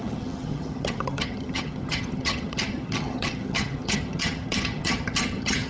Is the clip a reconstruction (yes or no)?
yes